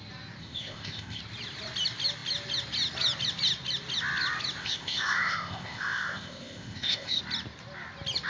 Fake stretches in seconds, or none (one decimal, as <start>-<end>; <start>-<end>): 0.4-1.2; 4.6-7.2